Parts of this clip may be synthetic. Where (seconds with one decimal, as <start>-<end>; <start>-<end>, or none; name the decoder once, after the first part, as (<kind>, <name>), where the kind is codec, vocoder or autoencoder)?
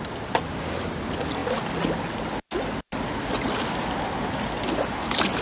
none